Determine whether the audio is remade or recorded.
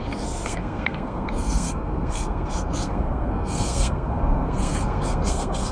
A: remade